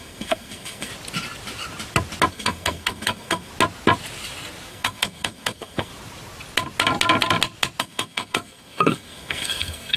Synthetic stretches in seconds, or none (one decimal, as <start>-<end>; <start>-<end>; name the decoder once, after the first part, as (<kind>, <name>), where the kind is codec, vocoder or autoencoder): 0.0-0.9 (codec, SNAC); 2.3-3.5; 4.7-5.9; 7.8-10.0